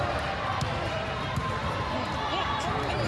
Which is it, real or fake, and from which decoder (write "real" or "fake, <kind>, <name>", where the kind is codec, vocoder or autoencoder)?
real